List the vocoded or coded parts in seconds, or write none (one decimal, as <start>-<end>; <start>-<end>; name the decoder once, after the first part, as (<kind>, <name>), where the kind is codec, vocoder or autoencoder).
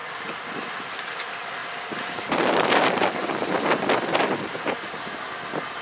0.0-1.2 (vocoder, BigVGAN v2); 1.6-3.2